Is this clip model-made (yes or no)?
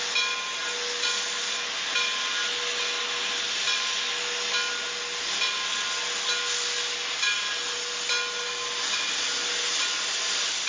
no